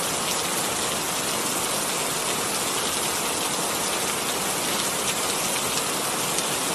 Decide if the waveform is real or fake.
real